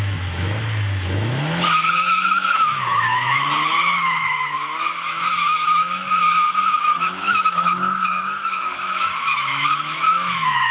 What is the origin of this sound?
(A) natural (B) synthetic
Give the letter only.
B